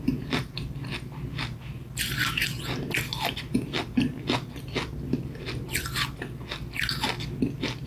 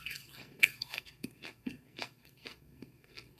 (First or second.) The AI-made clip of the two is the second